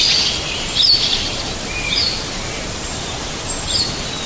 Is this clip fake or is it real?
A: real